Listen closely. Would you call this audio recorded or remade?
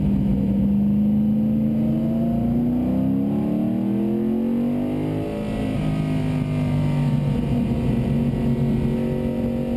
recorded